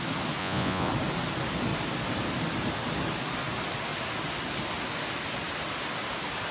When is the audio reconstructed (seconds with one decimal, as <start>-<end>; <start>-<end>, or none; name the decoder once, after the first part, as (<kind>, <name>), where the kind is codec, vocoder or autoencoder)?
0.4-0.9 (vocoder, Vocos)